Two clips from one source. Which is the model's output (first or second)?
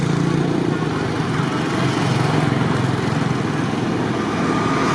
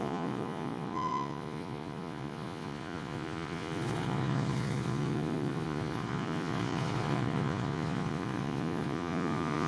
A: second